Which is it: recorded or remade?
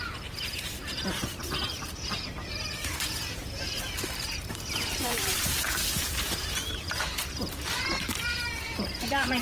remade